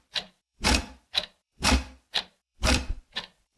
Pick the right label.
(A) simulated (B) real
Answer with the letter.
A